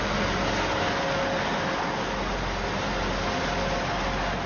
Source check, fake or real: real